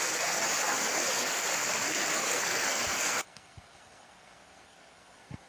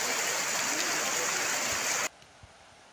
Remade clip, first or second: first